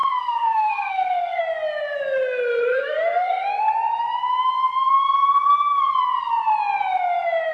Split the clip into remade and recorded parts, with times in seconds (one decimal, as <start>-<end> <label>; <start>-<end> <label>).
0.0-1.4 remade; 1.4-2.7 recorded; 2.7-3.5 remade; 3.5-7.5 recorded